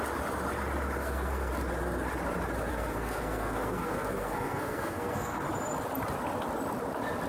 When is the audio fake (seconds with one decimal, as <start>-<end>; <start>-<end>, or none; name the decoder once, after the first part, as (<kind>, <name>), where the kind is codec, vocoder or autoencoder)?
1.0-1.5 (codec, SNAC); 2.7-5.4